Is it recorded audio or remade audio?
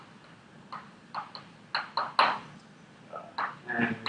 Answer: recorded